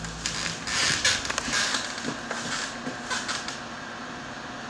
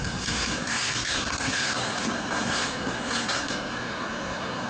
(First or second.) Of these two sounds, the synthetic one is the second